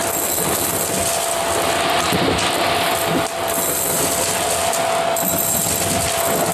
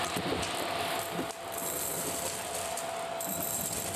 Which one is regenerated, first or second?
second